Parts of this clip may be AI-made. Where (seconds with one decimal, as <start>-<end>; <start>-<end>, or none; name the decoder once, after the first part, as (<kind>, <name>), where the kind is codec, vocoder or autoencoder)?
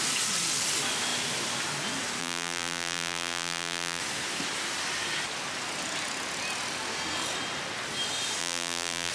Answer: 2.2-4.0 (vocoder, BigVGAN v2); 8.4-9.1